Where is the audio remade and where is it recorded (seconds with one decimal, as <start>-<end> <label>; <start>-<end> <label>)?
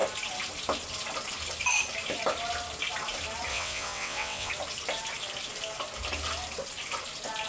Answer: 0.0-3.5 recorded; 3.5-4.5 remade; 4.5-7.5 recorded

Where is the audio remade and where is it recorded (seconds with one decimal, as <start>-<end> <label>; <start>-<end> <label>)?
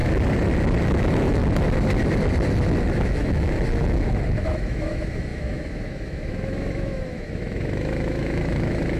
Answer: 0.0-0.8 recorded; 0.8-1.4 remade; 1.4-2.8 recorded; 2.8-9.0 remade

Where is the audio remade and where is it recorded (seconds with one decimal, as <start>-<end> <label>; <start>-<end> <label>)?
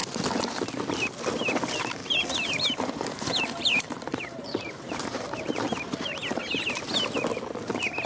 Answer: 0.0-2.0 recorded; 2.0-6.7 remade; 6.7-8.1 recorded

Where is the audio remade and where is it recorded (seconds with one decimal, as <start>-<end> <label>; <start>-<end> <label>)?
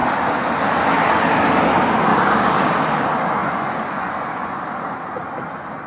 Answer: 0.0-3.4 recorded; 3.4-4.6 remade; 4.6-5.9 recorded